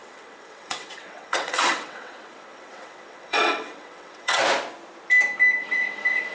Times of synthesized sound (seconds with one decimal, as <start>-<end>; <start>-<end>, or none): 0.0-4.4; 5.6-6.3